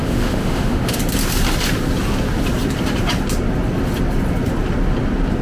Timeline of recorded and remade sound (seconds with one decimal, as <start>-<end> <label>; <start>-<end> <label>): 0.0-1.0 remade; 1.0-5.4 recorded